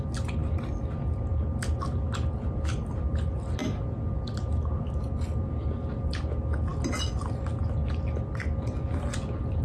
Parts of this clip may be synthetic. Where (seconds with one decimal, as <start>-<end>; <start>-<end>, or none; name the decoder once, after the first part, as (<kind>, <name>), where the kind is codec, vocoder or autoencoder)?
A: none